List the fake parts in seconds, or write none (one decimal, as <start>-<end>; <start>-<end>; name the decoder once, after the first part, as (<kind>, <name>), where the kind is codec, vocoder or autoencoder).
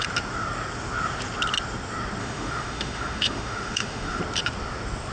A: 2.2-4.2 (autoencoder, DAC-VAE)